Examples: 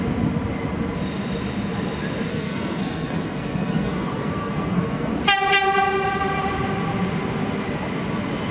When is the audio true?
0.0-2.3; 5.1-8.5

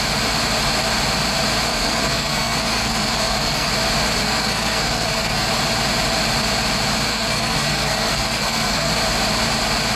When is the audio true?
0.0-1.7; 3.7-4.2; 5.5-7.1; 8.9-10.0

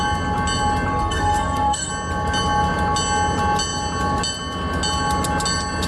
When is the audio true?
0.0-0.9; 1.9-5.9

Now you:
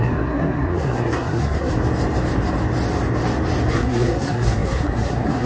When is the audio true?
1.7-3.7

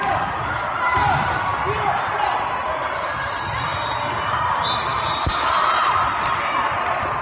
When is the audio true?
0.0-7.2